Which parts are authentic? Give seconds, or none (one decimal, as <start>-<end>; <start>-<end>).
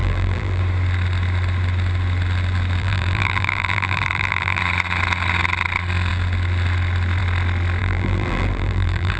0.6-2.8; 4.6-7.8